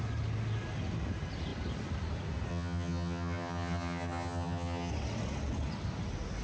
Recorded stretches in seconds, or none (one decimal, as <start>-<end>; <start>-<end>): 0.0-2.5; 4.9-6.4